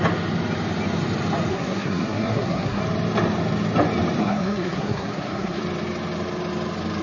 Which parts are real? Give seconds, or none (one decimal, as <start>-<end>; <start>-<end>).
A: 0.0-1.5; 2.8-4.2; 5.6-7.0